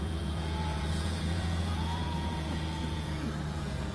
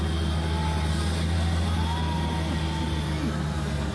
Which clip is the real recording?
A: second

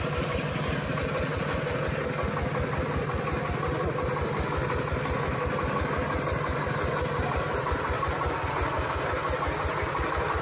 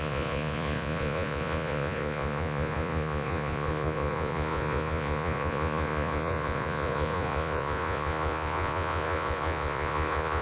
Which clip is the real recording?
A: first